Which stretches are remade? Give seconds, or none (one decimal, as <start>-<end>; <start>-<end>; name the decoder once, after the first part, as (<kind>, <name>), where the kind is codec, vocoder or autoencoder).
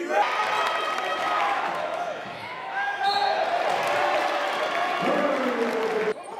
1.1-3.4 (autoencoder, DAC-VAE)